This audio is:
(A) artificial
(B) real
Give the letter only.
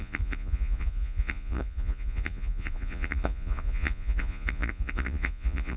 A